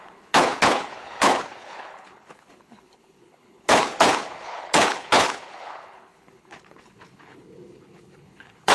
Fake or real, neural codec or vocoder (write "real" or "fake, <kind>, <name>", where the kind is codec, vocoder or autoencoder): fake, codec, HILCodec